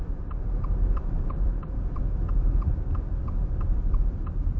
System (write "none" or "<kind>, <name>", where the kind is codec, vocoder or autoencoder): vocoder, BigVGAN v2